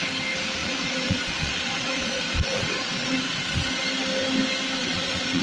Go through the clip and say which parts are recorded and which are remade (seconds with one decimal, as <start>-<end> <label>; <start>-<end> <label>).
0.0-0.6 recorded; 0.6-3.8 remade; 3.8-4.8 recorded; 4.8-5.4 remade